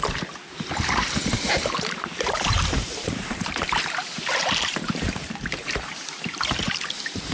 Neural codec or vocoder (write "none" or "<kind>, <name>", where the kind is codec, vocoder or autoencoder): vocoder, BigVGAN v2